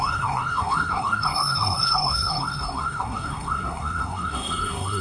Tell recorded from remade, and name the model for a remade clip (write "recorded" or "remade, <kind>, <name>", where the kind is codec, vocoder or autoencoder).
remade, codec, SNAC